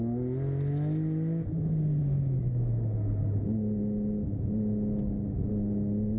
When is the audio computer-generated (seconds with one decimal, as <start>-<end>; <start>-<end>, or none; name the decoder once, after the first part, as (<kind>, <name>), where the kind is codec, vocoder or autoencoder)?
none